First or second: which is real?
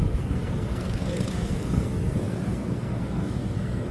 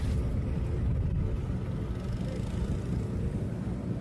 second